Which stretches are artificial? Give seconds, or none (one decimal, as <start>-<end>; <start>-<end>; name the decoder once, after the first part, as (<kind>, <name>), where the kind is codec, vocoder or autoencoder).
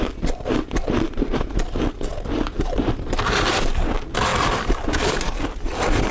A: 2.1-3.5 (vocoder, BigVGAN v2); 4.3-5.4